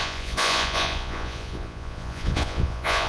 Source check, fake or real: fake